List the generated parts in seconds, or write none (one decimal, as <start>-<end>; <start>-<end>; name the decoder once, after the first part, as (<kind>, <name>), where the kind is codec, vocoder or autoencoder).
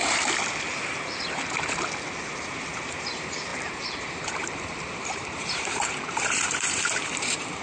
2.2-7.6 (vocoder, BigVGAN v2)